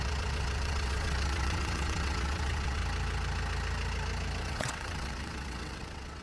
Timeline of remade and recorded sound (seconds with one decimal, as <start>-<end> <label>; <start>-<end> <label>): 0.0-2.8 remade; 2.8-4.4 recorded; 4.4-6.2 remade